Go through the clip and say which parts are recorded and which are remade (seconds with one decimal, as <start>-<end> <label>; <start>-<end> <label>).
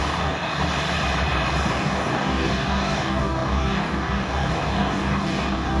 0.0-0.6 remade; 0.6-1.7 recorded; 1.7-5.8 remade